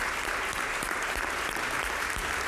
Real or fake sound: fake